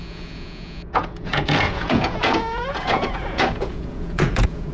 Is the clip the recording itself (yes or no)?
no